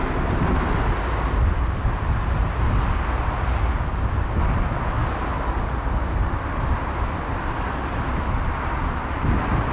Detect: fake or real real